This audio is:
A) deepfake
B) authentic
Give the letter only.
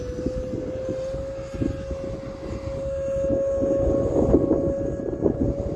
B